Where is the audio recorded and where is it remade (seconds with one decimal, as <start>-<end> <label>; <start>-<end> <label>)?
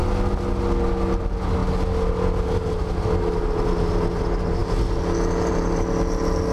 0.0-6.5 recorded